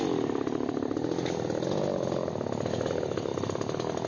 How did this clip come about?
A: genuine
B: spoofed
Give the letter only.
A